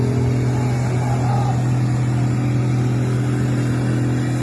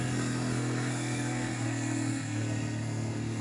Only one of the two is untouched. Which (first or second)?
first